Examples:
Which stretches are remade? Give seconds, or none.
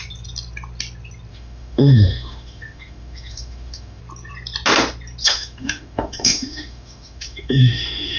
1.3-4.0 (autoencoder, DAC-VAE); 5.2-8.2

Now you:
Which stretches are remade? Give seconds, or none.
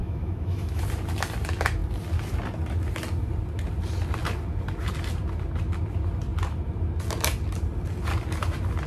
0.0-0.8 (autoencoder, DAC-VAE)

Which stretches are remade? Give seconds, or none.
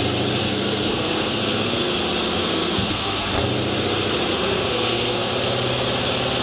0.4-1.9 (codec, SNAC); 2.4-3.3; 4.3-5.3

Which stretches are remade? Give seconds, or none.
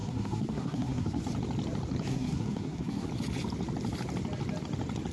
0.0-1.2 (codec, SNAC); 2.1-3.1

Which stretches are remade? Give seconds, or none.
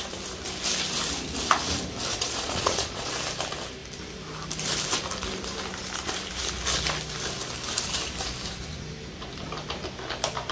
2.1-3.1 (vocoder, Vocos)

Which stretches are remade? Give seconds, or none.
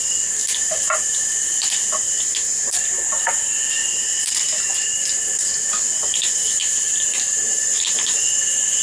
0.4-3.1 (vocoder, BigVGAN v2); 3.8-8.2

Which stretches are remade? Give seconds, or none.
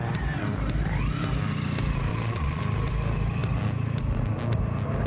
2.1-2.6 (vocoder, Vocos)